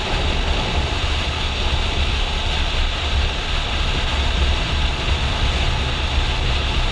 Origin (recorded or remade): recorded